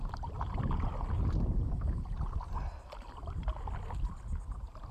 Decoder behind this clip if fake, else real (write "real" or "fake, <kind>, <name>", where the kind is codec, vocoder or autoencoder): real